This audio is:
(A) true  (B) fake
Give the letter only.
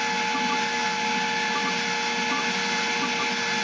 A